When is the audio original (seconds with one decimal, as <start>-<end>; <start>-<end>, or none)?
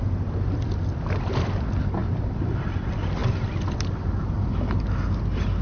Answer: 0.0-5.6